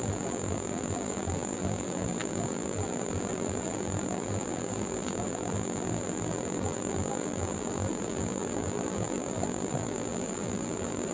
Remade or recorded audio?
remade